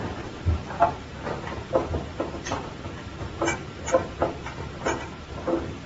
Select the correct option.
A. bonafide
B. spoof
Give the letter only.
A